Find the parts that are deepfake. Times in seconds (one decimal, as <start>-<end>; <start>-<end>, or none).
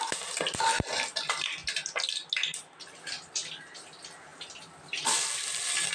none